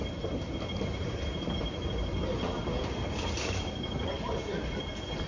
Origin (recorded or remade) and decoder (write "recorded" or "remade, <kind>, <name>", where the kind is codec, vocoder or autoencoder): recorded